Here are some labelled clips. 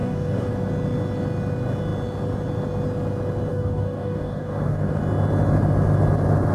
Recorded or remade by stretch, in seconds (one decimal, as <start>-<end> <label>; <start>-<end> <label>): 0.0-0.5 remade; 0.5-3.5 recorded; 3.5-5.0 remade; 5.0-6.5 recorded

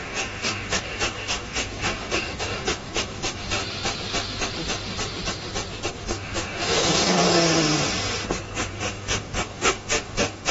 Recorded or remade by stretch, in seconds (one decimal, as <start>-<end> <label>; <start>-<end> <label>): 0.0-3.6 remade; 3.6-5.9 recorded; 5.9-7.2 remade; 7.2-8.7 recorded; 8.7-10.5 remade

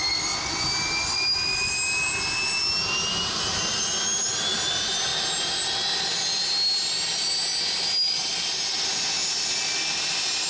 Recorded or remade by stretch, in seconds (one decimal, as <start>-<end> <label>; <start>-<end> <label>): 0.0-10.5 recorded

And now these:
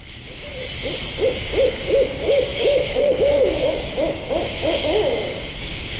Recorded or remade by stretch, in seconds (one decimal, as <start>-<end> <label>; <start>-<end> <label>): 0.0-0.5 remade; 0.5-1.2 recorded; 1.2-6.0 remade

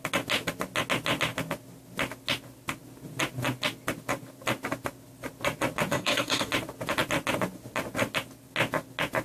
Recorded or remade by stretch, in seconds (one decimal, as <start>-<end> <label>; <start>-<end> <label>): 0.0-5.9 recorded; 5.9-6.5 remade; 6.5-9.2 recorded